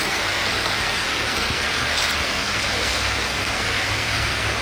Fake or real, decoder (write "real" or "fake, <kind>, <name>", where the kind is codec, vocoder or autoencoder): fake, codec, SNAC